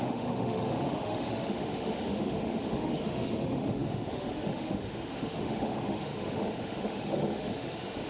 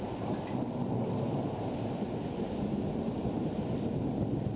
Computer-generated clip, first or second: first